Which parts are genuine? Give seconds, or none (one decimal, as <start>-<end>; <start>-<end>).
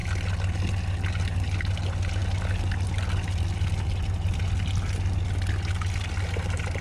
0.0-6.8